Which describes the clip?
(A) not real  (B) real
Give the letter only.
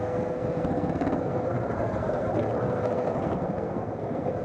A